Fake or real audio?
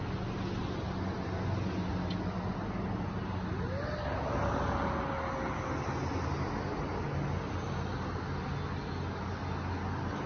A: real